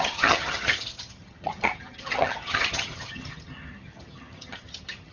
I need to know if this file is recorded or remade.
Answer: remade